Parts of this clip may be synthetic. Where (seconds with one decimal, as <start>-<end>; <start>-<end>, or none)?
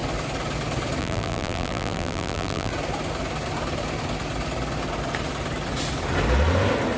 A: 1.0-2.7